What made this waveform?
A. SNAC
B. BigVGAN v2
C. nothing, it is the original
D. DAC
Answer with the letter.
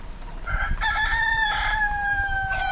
B